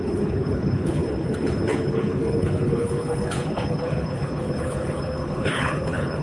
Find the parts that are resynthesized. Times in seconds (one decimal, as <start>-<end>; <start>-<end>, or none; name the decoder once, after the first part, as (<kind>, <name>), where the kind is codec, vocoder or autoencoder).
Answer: 0.0-6.2 (codec, HILCodec)